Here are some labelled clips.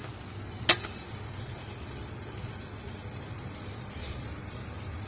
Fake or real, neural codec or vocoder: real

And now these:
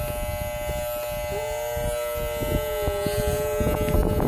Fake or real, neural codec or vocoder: real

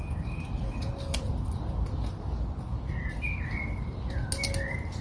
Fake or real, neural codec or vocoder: real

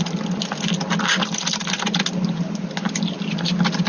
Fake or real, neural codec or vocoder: real